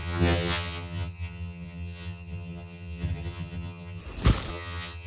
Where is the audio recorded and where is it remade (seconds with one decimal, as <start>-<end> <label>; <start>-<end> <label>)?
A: 0.0-4.0 remade; 4.0-4.5 recorded; 4.5-5.1 remade